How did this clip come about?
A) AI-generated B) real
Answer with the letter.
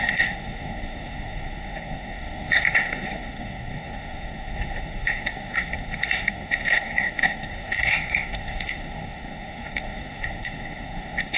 A